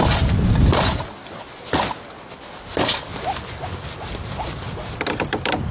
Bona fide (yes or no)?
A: yes